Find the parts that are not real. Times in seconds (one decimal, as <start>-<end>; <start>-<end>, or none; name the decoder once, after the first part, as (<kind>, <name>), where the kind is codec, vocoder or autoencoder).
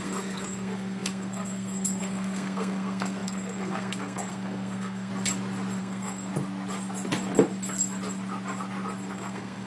0.0-5.1 (codec, SNAC); 5.8-6.3; 9.1-9.7